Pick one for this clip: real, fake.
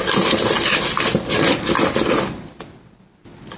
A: real